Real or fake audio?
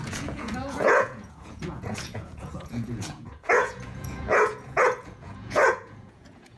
fake